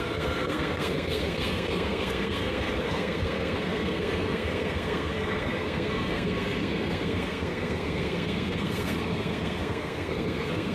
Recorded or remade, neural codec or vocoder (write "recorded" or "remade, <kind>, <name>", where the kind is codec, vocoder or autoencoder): remade, codec, SNAC